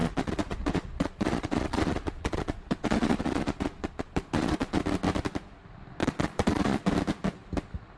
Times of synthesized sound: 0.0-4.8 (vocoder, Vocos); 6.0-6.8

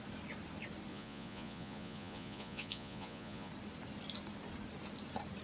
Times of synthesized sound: 0.9-3.5 (vocoder, Vocos)

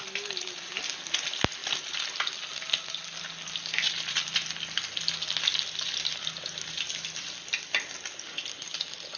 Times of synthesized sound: none

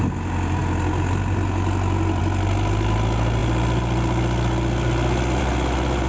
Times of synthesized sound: none

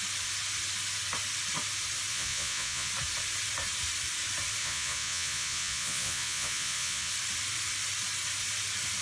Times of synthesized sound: 2.1-2.9 (vocoder, Vocos); 4.6-7.1

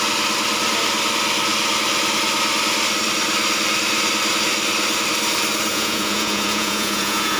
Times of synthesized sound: 5.7-7.4 (vocoder, Vocos)

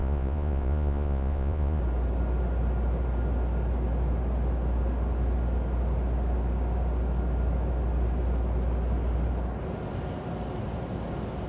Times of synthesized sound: 0.0-1.8 (vocoder, Vocos)